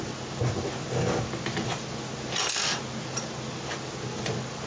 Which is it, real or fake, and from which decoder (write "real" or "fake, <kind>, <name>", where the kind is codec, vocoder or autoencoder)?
real